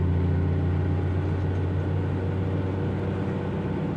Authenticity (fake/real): real